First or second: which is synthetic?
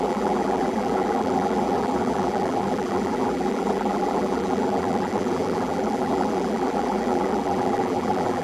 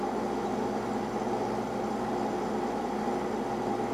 first